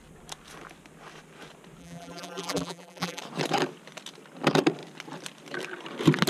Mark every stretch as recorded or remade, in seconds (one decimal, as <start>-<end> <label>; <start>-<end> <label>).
0.0-1.8 recorded; 1.8-3.2 remade; 3.2-6.3 recorded